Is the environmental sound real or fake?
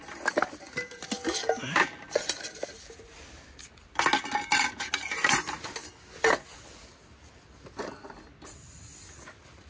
real